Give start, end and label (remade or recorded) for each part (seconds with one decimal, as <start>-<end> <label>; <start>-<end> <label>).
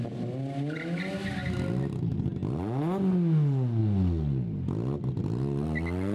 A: 0.0-6.1 recorded